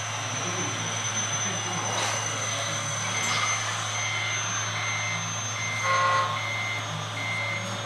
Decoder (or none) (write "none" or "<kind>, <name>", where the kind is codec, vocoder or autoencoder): none